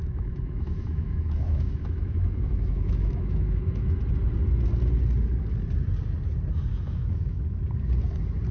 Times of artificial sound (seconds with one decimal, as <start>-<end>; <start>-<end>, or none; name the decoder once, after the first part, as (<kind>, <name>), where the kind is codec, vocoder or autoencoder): 0.0-4.0 (autoencoder, DAC-VAE); 6.7-7.4